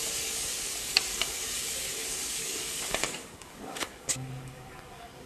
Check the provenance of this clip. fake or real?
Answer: fake